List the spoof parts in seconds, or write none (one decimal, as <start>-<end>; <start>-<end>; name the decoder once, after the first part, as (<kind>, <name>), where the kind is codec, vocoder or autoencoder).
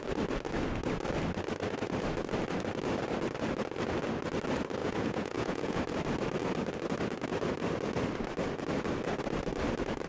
4.8-5.8 (vocoder, Vocos)